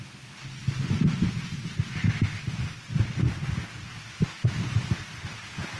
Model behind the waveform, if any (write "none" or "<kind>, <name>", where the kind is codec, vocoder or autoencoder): none